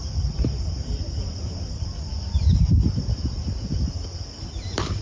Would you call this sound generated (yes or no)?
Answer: no